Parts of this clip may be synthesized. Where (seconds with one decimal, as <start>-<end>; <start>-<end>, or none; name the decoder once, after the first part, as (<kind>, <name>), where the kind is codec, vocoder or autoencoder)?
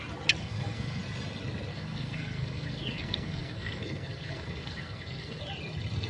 0.4-1.0 (codec, SNAC); 1.7-5.4